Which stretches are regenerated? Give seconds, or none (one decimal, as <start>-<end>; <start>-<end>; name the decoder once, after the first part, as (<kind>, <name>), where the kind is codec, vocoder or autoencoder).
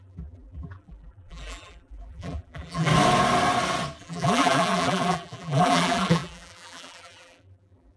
0.0-2.9 (vocoder, BigVGAN v2); 4.0-8.0